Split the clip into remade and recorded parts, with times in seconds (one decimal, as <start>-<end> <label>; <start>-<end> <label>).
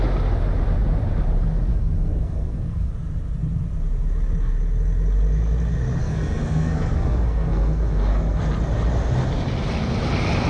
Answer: 0.0-1.7 recorded; 1.7-2.9 remade; 2.9-6.0 recorded; 6.0-8.4 remade; 8.4-10.5 recorded